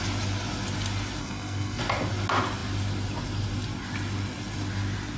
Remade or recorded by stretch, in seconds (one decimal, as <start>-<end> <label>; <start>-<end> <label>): 0.0-1.2 recorded; 1.2-1.8 remade; 1.8-5.2 recorded